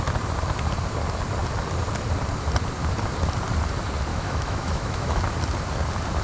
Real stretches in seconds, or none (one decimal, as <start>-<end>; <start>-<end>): 0.0-4.1; 5.2-6.2